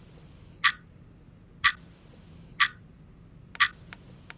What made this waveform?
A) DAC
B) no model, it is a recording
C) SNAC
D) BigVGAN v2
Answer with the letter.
B